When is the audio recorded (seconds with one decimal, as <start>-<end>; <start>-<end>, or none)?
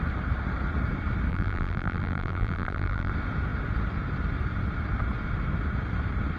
0.0-1.3; 3.1-6.4